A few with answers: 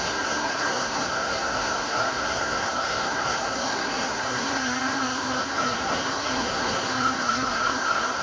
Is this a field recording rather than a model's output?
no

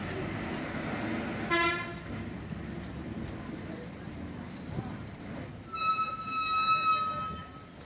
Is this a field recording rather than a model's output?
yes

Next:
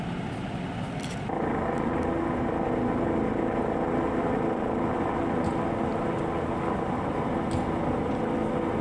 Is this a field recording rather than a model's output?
yes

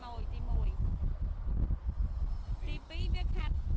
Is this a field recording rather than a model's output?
yes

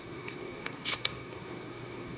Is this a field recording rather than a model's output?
no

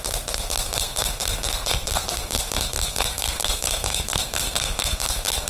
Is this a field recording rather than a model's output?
no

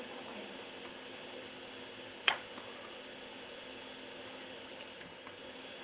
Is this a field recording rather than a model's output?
yes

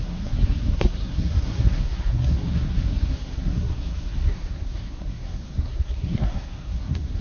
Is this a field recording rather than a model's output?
no